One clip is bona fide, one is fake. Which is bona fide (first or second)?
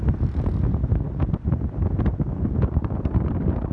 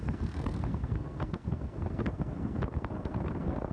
first